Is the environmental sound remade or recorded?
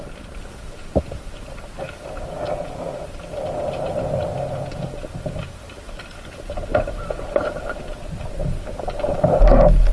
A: recorded